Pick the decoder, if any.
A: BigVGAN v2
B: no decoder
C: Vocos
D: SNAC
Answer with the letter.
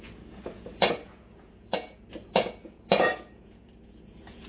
C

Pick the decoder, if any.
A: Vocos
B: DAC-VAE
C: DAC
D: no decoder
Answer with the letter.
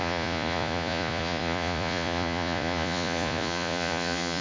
A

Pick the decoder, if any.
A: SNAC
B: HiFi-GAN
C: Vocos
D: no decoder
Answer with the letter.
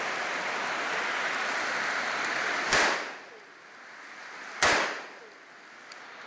D